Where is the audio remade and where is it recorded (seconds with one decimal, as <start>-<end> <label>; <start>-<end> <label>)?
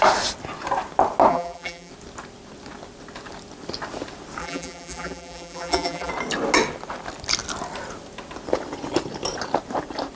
0.0-1.3 recorded; 1.3-1.9 remade; 1.9-4.4 recorded; 4.4-6.1 remade; 6.1-10.2 recorded